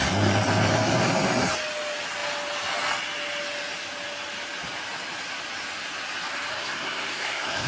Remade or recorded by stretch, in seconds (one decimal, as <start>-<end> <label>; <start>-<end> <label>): 0.0-6.5 recorded; 6.5-7.7 remade